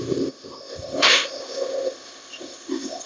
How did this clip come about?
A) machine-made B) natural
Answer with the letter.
A